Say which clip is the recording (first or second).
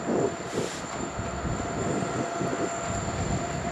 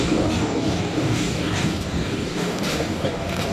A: first